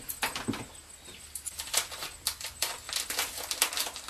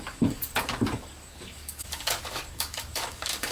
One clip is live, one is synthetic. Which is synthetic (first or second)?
second